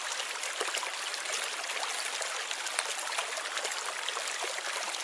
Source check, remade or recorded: recorded